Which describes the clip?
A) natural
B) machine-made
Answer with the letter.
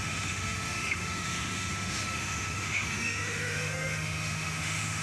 B